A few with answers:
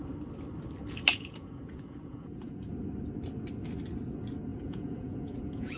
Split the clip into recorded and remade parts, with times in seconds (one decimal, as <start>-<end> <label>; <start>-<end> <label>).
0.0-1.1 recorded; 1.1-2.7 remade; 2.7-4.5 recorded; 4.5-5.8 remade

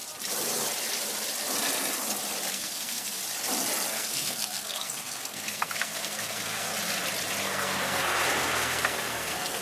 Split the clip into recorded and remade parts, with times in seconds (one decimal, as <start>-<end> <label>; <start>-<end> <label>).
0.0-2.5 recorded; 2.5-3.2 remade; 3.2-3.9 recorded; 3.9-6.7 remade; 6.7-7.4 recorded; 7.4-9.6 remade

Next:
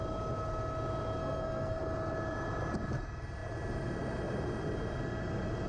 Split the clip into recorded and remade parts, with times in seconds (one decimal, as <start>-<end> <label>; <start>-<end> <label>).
0.0-1.2 recorded; 1.2-1.8 remade; 1.8-5.7 recorded

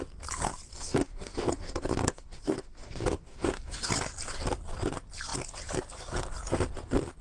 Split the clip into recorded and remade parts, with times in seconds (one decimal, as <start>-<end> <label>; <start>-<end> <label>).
0.0-0.7 recorded; 0.7-3.9 remade; 3.9-7.2 recorded